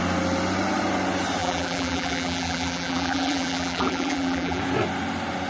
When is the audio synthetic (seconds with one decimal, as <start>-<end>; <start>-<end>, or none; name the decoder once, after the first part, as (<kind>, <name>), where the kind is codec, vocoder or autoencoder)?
1.4-4.6 (vocoder, BigVGAN v2)